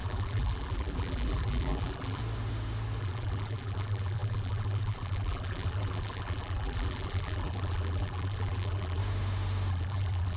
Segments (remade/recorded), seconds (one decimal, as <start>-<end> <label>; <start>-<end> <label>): 0.0-2.2 remade; 2.2-3.0 recorded; 3.0-9.0 remade; 9.0-9.7 recorded; 9.7-10.4 remade